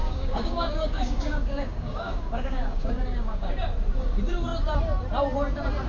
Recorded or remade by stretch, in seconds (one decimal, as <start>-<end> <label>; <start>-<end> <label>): 0.0-3.5 remade; 3.5-5.9 recorded